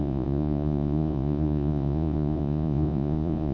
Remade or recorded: remade